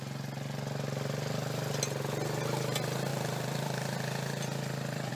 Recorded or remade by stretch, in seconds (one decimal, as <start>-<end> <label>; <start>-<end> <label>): 0.0-3.1 recorded; 3.1-5.1 remade